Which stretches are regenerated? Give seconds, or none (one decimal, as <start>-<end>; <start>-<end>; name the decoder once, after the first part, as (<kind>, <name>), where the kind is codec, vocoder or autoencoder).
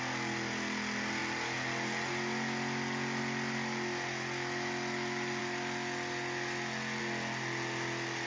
none